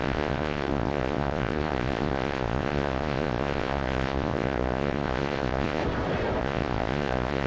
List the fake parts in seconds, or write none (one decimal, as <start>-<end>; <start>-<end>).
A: 0.0-5.8; 6.4-7.5